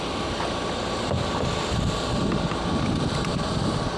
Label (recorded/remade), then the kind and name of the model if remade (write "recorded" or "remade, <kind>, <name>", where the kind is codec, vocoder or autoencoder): recorded